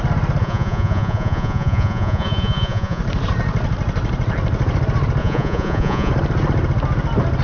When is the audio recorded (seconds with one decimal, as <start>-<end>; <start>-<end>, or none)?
0.0-0.4; 3.0-5.2; 6.1-7.4